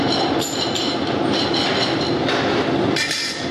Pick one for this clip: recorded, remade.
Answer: recorded